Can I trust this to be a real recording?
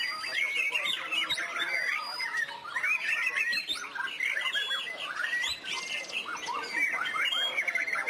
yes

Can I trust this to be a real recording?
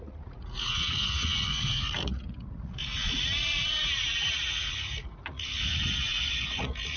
no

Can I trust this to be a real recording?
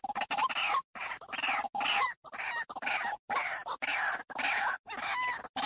yes